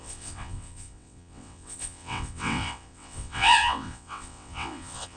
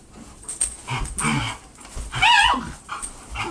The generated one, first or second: first